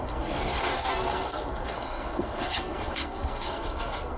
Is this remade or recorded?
remade